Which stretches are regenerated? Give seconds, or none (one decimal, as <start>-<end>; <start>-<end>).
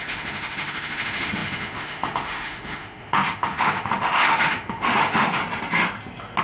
0.0-5.4